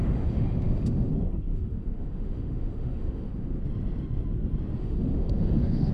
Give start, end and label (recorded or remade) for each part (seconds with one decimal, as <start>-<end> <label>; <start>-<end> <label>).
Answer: 0.0-1.1 remade; 1.1-1.5 recorded; 1.5-3.6 remade; 3.6-4.8 recorded; 4.8-5.9 remade